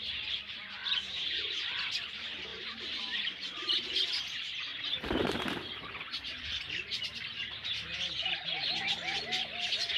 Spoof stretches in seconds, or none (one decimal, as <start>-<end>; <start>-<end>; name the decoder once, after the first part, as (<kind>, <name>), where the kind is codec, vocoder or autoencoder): 0.0-2.5 (vocoder, BigVGAN v2); 3.2-4.7; 5.7-10.0